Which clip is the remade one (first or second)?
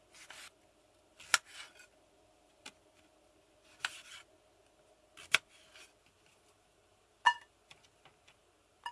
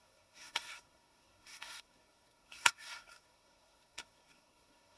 second